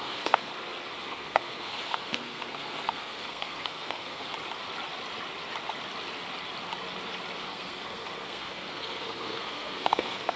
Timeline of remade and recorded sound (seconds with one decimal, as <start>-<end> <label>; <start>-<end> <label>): 0.0-0.5 remade; 0.5-1.0 recorded; 1.0-4.3 remade; 4.3-7.4 recorded; 7.4-10.4 remade